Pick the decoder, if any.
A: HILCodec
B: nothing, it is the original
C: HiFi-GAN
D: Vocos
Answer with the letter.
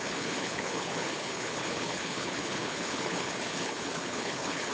A